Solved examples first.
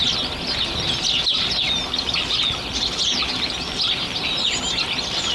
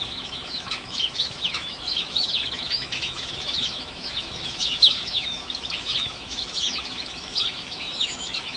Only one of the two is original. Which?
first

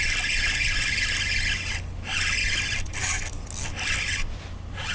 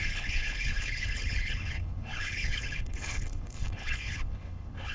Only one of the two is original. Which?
first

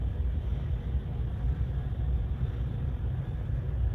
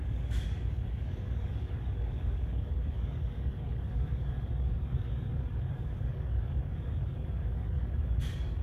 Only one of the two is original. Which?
first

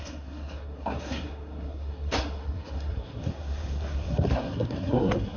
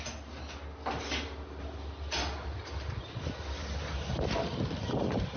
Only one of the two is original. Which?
second